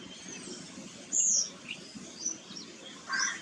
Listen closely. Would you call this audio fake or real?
real